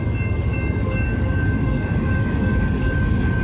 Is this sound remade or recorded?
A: remade